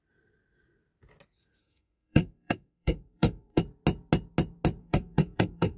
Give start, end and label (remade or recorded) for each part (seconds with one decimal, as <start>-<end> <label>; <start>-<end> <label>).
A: 0.0-1.6 recorded; 1.6-3.6 remade; 3.6-4.8 recorded; 4.8-5.8 remade